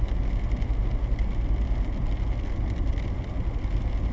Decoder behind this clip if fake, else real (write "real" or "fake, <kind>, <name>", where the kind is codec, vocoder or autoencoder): real